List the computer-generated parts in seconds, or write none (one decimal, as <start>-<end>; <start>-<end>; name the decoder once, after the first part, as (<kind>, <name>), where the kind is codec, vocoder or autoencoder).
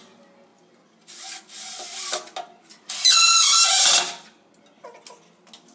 none